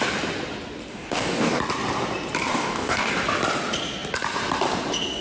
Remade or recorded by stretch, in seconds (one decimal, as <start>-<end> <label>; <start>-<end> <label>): 0.0-0.9 recorded; 0.9-1.6 remade; 1.6-2.5 recorded; 2.5-3.1 remade; 3.1-5.2 recorded